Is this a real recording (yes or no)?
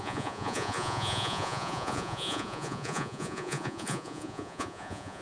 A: no